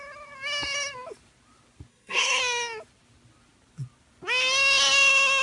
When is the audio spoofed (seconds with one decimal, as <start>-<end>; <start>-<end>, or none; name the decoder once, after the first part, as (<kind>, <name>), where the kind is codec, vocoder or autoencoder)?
1.9-2.4 (codec, SNAC)